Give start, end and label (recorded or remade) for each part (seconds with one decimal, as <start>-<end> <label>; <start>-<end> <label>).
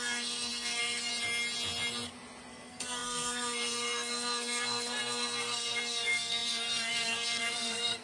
0.0-1.1 remade; 1.1-2.5 recorded; 2.5-8.0 remade